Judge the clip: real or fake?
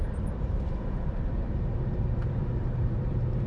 fake